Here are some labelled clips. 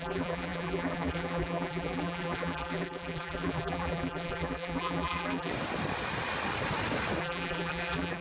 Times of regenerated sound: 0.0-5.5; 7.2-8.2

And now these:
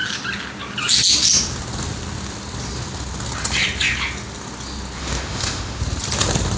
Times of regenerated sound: 5.0-5.8

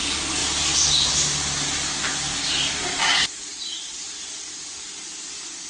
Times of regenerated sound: 0.4-1.1; 3.5-4.9

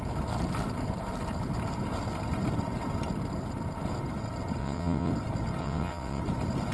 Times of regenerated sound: 4.6-5.1; 5.6-6.2

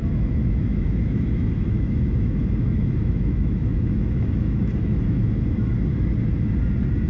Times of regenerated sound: 0.0-5.7

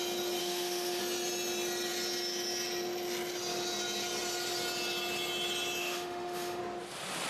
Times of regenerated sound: 0.4-1.0; 5.8-6.6

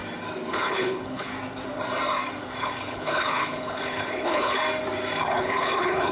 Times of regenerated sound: 0.5-1.3; 2.6-4.6; 5.2-6.1